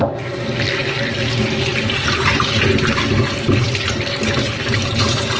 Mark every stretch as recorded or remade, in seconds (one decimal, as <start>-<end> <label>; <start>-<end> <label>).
0.0-5.4 recorded